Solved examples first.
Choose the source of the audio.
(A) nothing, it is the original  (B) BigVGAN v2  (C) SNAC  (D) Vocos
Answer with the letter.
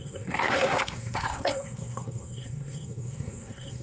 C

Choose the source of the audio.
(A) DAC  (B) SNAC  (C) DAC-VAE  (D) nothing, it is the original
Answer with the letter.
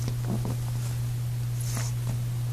D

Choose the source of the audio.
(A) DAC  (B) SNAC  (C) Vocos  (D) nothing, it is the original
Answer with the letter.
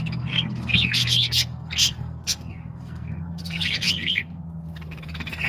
B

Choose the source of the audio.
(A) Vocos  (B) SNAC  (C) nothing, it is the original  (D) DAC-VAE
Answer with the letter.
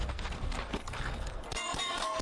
B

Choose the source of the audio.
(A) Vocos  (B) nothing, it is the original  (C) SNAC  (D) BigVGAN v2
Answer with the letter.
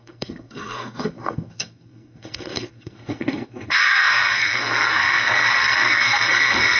C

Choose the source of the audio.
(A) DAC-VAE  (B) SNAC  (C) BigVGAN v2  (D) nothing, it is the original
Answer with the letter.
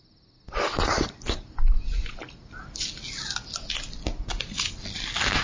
D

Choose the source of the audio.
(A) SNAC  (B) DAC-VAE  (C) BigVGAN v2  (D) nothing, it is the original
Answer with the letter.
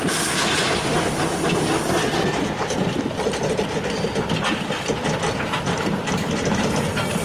D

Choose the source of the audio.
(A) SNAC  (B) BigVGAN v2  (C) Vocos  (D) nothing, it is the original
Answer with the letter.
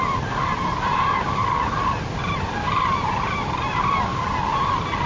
D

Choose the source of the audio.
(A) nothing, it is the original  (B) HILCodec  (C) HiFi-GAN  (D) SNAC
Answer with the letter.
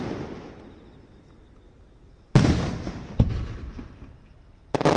A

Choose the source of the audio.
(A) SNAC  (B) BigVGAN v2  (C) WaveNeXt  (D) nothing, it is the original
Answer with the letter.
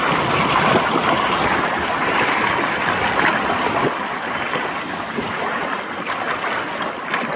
D